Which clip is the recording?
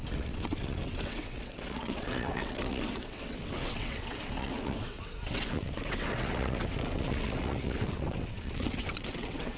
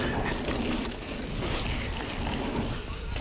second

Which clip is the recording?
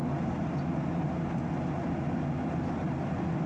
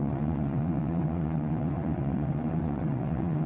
first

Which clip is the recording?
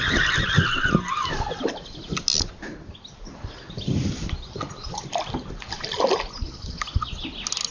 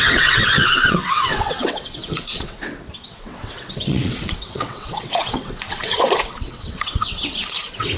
first